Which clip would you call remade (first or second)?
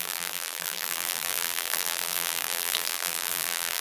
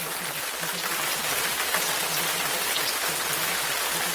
first